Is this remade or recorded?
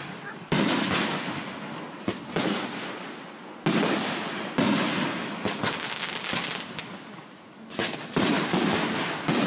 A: recorded